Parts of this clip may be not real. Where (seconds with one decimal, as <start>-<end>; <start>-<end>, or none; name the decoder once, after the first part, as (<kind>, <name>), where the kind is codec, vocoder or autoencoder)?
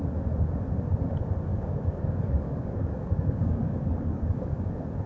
1.5-4.6 (codec, DAC)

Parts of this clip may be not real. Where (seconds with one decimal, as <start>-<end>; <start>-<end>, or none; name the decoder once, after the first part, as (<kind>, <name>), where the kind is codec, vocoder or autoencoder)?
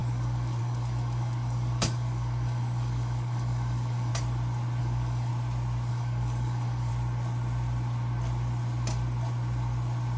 0.0-4.1 (codec, DAC); 4.8-5.3; 5.9-6.9